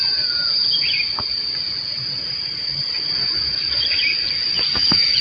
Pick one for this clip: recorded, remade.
recorded